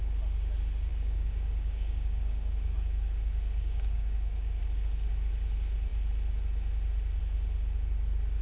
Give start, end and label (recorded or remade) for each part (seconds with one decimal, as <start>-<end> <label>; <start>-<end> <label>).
0.0-0.9 recorded; 0.9-4.6 remade; 4.6-8.4 recorded

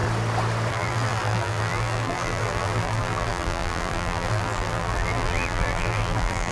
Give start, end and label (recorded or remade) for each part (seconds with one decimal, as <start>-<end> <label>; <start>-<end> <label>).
0.0-0.7 recorded; 0.7-6.5 remade

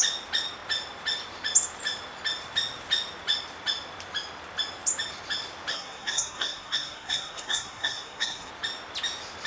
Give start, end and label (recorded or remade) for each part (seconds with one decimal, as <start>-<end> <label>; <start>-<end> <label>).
0.0-5.7 recorded; 5.7-8.5 remade; 8.5-9.5 recorded

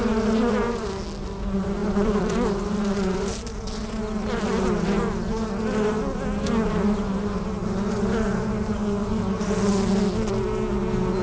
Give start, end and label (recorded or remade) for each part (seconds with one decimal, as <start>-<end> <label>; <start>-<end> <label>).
0.0-1.8 recorded; 1.8-3.2 remade; 3.2-11.2 recorded